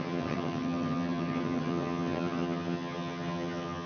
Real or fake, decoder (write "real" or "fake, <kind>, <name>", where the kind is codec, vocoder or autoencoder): fake, vocoder, HiFi-GAN